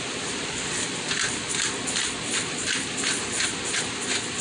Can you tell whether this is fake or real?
real